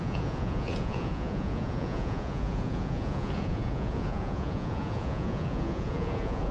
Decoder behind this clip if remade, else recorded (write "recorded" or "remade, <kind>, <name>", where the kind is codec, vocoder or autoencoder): remade, vocoder, Vocos